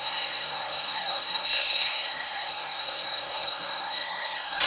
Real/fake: fake